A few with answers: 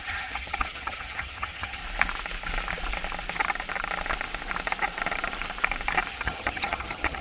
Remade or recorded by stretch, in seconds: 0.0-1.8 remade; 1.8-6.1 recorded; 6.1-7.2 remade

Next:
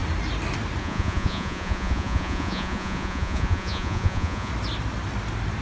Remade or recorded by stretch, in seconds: 0.0-0.8 recorded; 0.8-4.5 remade; 4.5-5.6 recorded

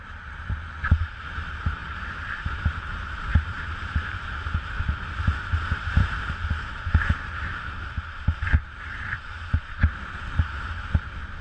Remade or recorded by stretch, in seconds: 0.0-1.8 recorded; 1.8-2.5 remade; 2.5-3.3 recorded; 3.3-4.2 remade; 4.2-6.0 recorded; 6.0-9.6 remade; 9.6-11.4 recorded

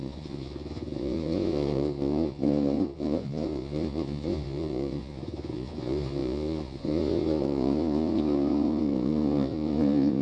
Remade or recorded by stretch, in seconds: 0.0-10.2 remade

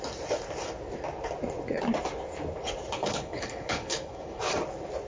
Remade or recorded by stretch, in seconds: 0.0-3.0 recorded; 3.0-4.4 remade; 4.4-5.1 recorded

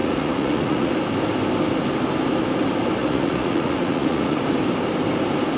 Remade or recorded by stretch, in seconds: 0.0-0.9 remade; 0.9-3.0 recorded; 3.0-4.4 remade; 4.4-5.6 recorded

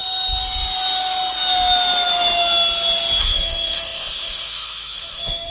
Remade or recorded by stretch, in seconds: 0.0-3.2 recorded; 3.2-5.5 remade